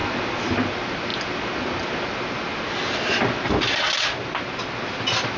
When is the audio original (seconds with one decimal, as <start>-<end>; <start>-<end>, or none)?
0.0-5.4